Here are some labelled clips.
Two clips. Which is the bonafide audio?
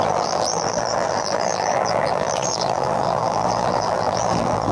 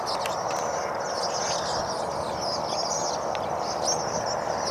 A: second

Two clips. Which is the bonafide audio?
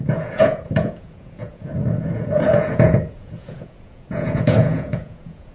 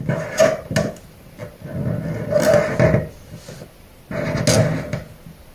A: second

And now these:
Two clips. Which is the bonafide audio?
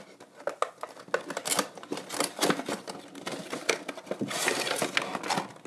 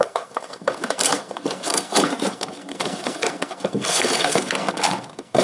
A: first